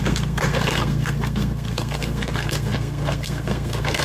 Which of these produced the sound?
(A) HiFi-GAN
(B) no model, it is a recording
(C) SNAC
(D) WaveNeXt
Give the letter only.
C